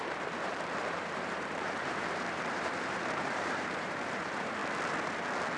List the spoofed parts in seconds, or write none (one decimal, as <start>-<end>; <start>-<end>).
0.0-4.6